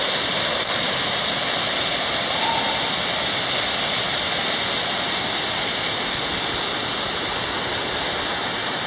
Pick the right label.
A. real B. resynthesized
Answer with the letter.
A